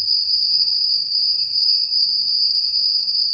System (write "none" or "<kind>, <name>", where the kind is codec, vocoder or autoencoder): codec, SNAC